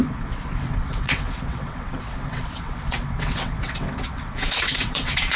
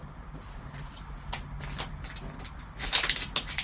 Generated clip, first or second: first